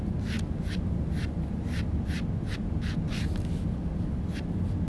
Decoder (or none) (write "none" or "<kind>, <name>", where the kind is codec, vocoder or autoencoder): none